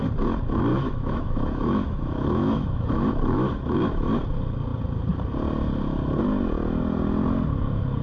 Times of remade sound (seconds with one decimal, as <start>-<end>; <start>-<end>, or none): 0.7-4.1

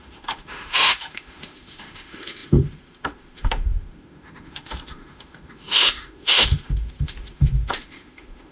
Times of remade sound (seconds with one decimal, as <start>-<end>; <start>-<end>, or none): 0.0-8.5

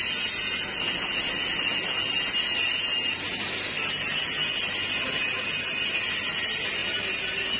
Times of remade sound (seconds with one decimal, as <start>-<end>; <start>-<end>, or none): none

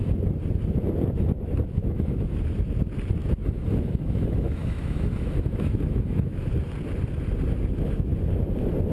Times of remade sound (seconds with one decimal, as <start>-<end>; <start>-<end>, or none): 1.8-2.3; 3.2-6.5

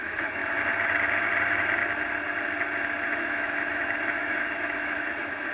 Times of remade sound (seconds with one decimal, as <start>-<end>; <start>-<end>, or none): 0.0-0.4; 3.2-5.5

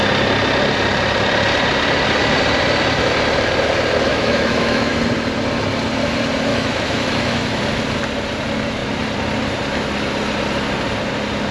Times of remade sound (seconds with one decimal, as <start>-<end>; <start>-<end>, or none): 4.1-4.9; 6.5-7.6